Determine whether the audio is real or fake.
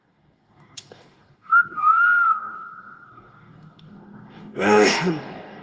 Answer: fake